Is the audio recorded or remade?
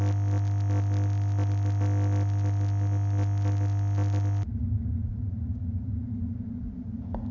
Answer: recorded